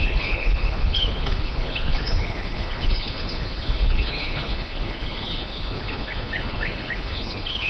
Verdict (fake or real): fake